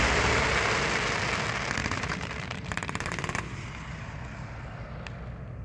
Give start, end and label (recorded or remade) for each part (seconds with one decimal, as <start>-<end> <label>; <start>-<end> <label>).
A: 0.0-1.8 recorded; 1.8-2.9 remade; 2.9-5.6 recorded